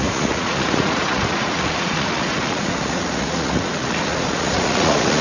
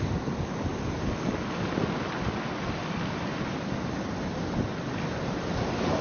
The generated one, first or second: first